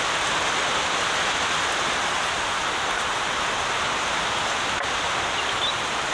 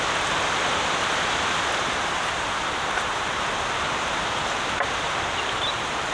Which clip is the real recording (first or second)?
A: first